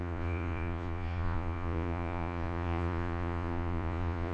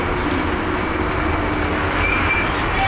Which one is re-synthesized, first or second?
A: first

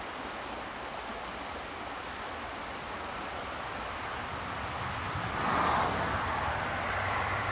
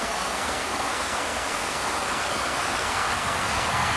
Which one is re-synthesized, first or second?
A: second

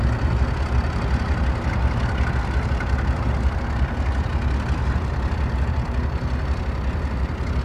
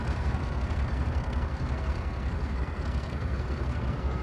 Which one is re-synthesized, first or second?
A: second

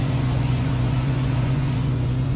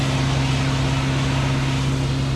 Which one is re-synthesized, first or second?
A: first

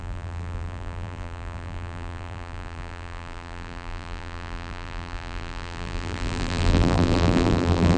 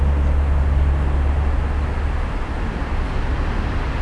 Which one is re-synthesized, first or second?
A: first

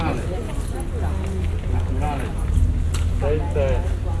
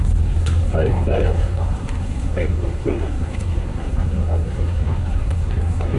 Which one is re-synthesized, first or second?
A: second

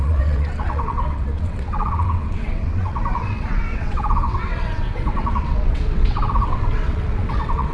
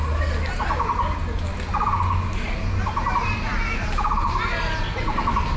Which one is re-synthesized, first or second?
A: first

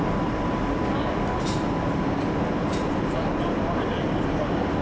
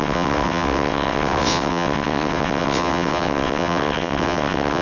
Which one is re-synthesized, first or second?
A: second